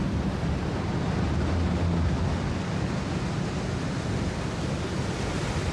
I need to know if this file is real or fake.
real